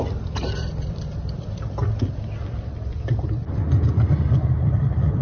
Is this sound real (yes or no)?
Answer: no